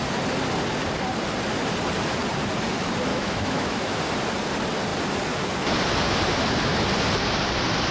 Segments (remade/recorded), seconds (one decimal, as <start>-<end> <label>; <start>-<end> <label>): 0.0-3.1 recorded; 3.1-4.0 remade; 4.0-7.9 recorded